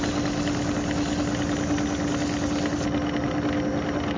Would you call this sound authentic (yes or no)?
yes